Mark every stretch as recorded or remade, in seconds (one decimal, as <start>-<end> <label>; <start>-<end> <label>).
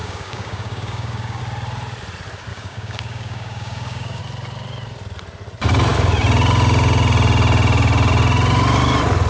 0.0-1.4 remade; 1.4-2.5 recorded; 2.5-4.2 remade; 4.2-9.3 recorded